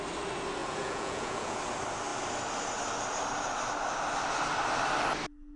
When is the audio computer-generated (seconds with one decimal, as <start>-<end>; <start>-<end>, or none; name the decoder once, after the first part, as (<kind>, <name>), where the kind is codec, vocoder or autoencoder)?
0.6-1.6 (vocoder, Vocos)